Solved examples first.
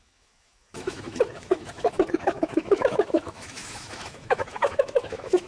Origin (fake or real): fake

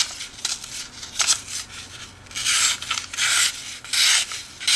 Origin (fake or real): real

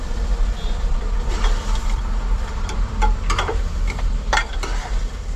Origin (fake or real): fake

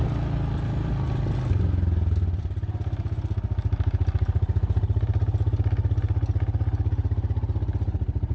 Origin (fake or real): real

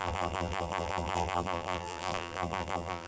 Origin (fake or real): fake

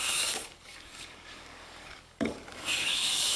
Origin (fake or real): fake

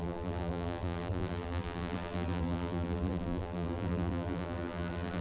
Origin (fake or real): fake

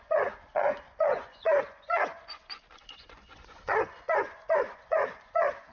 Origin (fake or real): fake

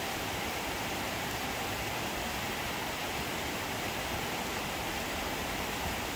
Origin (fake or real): fake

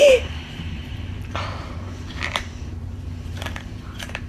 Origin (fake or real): fake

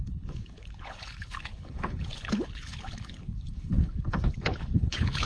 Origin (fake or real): fake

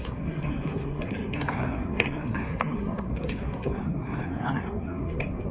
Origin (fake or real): fake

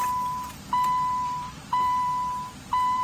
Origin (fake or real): fake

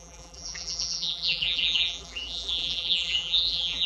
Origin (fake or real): fake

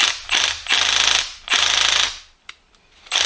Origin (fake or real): real